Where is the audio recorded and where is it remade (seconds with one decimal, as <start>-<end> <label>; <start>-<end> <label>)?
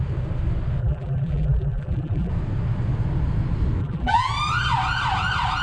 0.0-0.8 recorded; 0.8-2.3 remade; 2.3-3.8 recorded; 3.8-4.3 remade; 4.3-5.6 recorded